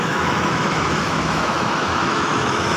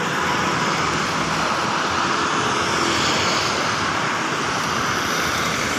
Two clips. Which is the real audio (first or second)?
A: second